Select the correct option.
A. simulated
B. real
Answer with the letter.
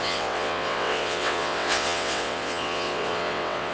A